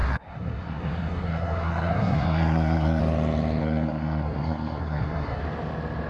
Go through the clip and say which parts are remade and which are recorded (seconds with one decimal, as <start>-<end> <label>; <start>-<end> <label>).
0.0-3.0 remade; 3.0-3.6 recorded; 3.6-5.4 remade; 5.4-6.1 recorded

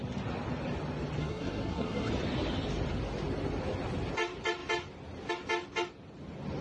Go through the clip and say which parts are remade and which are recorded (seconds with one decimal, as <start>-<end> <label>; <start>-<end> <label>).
0.0-1.2 recorded; 1.2-2.1 remade; 2.1-6.6 recorded

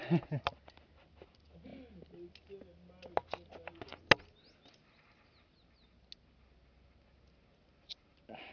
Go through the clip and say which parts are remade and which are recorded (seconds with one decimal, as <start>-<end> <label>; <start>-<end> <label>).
0.0-8.5 recorded

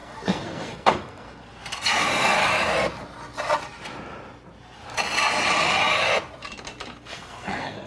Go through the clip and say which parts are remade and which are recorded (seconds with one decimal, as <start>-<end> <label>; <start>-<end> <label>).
0.0-2.4 remade; 2.4-7.1 recorded; 7.1-7.9 remade

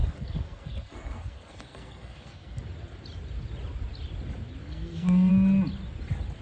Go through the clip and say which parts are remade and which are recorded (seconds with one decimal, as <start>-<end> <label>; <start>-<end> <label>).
0.0-2.6 remade; 2.6-4.6 recorded; 4.6-5.3 remade; 5.3-6.4 recorded

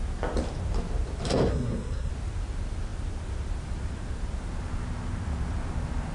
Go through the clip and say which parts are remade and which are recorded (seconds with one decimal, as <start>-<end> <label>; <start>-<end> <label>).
0.0-1.5 recorded; 1.5-2.1 remade; 2.1-6.1 recorded

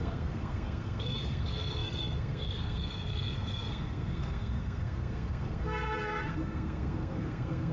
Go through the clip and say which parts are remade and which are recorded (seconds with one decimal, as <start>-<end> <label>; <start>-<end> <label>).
0.0-7.7 remade